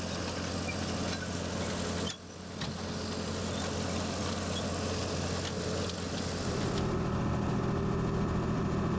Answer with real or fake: real